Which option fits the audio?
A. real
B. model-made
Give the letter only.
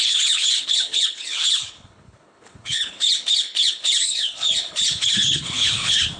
B